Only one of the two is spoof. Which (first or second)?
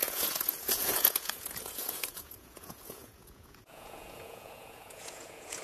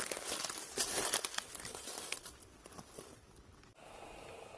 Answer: first